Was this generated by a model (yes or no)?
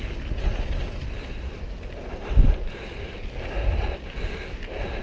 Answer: no